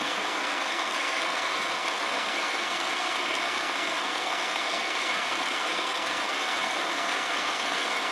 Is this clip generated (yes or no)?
yes